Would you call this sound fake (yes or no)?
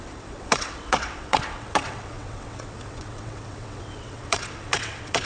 yes